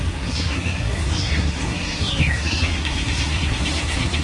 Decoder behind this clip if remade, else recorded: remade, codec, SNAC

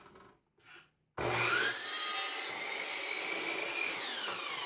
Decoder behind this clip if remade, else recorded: recorded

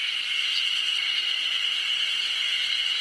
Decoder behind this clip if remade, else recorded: recorded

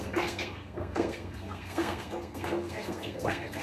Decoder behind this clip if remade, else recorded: remade, codec, SNAC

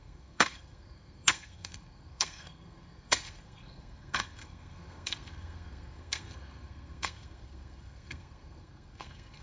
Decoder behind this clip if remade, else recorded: remade, codec, SNAC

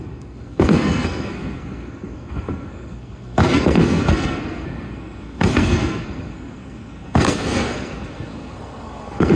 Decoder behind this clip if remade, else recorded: remade, codec, SNAC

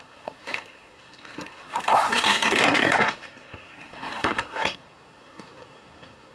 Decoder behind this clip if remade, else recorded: remade, codec, SNAC